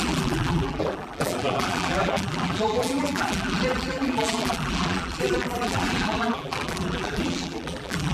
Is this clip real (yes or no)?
no